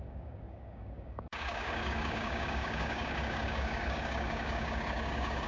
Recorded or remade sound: remade